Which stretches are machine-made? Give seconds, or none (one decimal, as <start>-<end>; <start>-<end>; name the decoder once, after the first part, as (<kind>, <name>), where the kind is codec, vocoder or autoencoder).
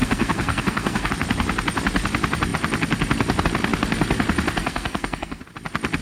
0.0-1.1 (codec, SNAC); 4.6-5.4